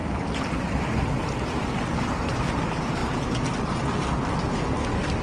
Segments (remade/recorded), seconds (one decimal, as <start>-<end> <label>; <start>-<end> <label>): 0.0-5.2 recorded